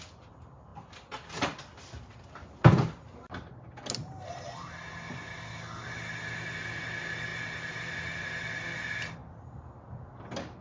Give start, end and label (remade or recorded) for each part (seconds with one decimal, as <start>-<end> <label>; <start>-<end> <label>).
0.0-10.6 recorded